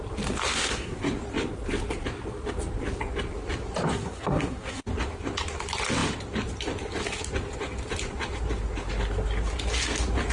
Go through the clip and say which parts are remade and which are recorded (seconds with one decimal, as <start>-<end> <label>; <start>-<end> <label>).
0.0-0.5 recorded; 0.5-1.1 remade; 1.1-3.9 recorded; 3.9-4.8 remade; 4.8-10.3 recorded